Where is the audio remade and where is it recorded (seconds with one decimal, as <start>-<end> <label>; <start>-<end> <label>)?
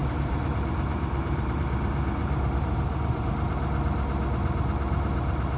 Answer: 0.0-1.6 remade; 1.6-2.2 recorded; 2.2-3.3 remade; 3.3-5.6 recorded